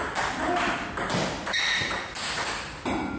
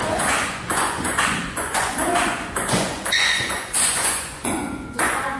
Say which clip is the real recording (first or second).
first